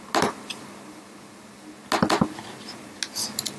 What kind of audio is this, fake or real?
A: real